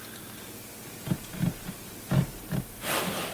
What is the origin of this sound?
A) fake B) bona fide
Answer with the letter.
B